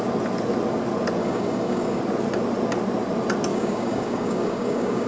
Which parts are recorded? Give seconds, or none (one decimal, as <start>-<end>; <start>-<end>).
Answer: 0.0-1.2; 2.0-3.5